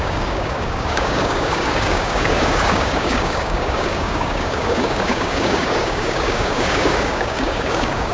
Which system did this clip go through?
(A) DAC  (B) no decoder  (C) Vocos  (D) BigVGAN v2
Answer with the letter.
A